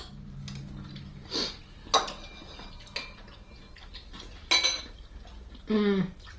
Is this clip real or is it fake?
real